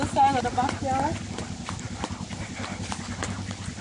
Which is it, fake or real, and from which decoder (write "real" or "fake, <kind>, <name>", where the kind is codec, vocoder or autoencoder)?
real